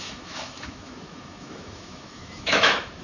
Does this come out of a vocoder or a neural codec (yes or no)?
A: yes